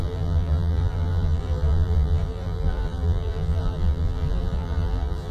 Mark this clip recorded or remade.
remade